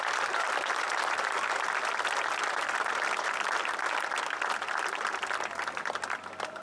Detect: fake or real real